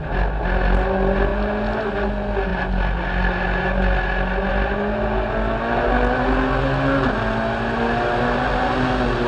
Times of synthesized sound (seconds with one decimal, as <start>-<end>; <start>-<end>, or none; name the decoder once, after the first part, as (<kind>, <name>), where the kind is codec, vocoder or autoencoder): none

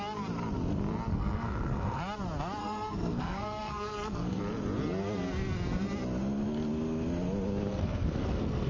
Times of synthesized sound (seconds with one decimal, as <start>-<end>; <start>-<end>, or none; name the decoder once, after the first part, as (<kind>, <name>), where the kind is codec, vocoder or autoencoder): 1.1-2.0 (codec, SNAC); 2.6-4.4; 7.7-8.7